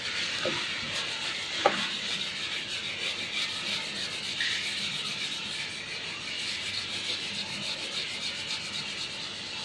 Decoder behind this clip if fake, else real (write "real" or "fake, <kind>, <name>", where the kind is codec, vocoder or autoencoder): real